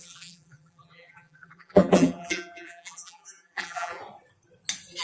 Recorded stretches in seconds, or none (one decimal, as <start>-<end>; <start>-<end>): 4.0-5.0